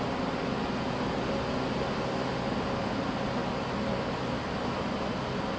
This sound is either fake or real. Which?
real